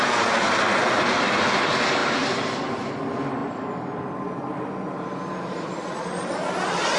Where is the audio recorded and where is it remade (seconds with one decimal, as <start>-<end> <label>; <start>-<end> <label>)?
0.0-7.0 recorded